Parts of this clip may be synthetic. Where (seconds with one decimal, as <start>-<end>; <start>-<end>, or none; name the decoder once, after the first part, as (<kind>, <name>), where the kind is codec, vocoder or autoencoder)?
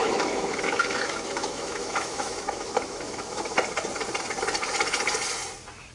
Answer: 0.0-3.5 (autoencoder, DAC-VAE)